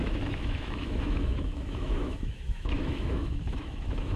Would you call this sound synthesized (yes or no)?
yes